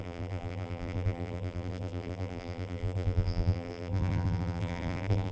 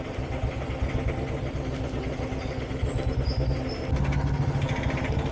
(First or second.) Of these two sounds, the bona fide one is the second